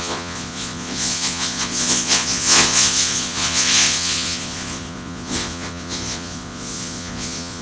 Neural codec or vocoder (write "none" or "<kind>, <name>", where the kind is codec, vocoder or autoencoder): vocoder, Vocos